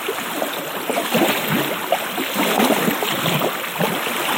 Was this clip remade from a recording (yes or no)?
no